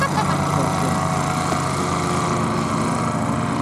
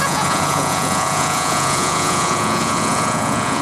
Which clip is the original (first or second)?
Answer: first